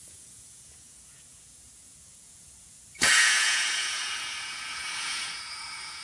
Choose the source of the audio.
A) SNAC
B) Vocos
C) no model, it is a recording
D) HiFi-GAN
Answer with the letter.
B